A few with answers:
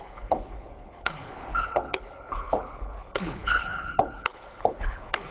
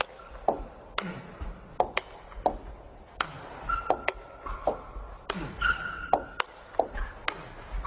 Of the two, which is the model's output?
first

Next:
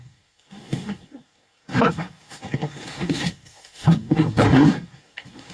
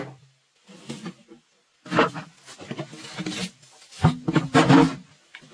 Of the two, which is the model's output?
first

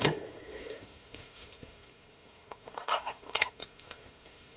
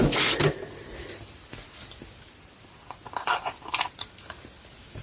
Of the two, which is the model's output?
first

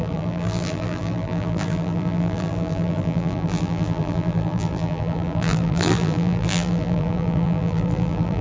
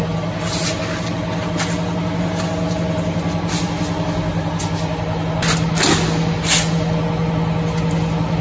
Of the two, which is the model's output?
first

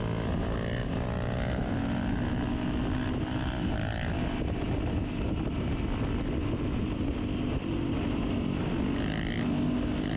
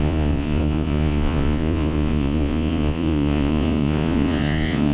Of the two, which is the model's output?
second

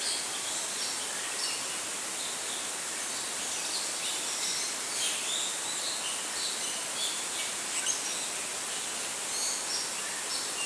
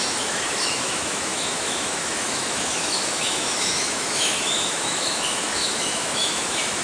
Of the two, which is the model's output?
second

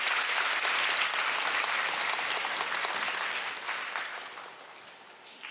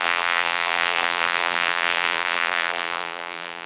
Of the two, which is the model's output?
second